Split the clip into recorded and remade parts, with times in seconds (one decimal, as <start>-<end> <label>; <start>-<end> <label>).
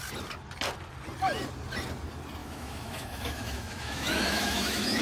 0.0-2.4 recorded; 2.4-5.0 remade